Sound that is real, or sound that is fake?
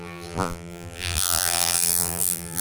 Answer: fake